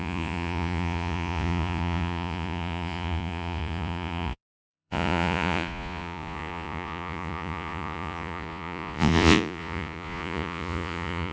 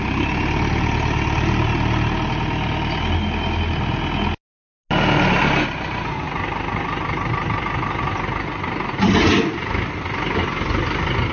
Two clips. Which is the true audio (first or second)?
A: second